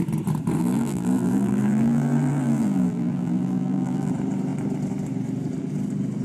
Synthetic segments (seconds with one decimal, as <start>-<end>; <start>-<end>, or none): 0.6-4.1